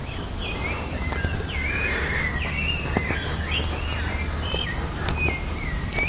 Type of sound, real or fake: real